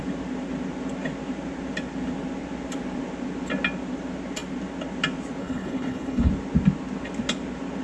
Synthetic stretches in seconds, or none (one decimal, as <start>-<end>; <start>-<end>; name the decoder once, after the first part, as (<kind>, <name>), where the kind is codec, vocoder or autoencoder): 5.4-6.3 (codec, HILCodec)